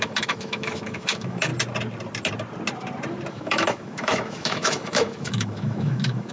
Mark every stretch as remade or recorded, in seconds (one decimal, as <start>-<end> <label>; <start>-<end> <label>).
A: 0.0-1.5 remade; 1.5-3.3 recorded; 3.3-6.3 remade